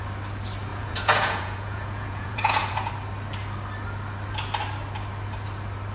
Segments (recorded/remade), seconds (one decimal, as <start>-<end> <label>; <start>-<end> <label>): 0.0-0.7 recorded; 0.7-2.9 remade; 2.9-5.9 recorded